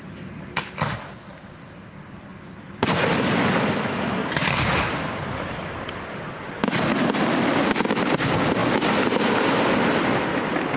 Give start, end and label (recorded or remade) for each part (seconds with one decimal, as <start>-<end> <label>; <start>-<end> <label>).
0.0-4.2 remade; 4.2-5.0 recorded; 5.0-10.8 remade